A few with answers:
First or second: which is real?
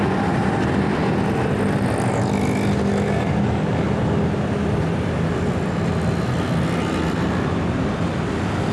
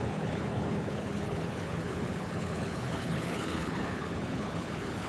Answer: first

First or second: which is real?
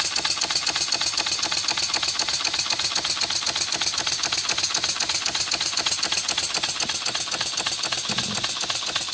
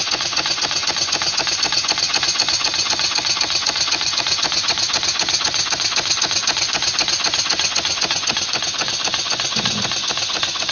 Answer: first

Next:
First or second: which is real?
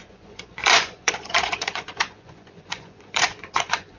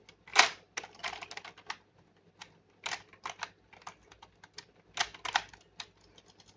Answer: second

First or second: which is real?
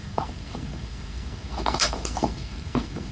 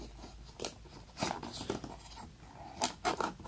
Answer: second